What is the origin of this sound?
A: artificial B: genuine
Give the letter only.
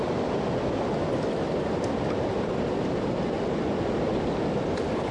B